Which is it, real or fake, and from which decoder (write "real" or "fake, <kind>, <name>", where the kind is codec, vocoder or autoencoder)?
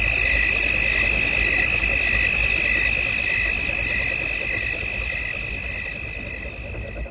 real